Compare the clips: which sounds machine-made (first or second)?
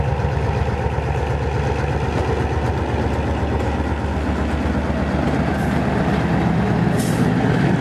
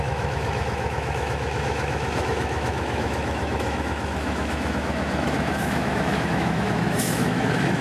second